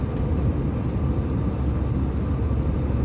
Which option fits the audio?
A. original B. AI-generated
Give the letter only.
A